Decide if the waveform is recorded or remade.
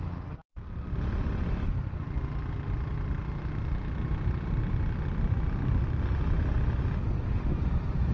recorded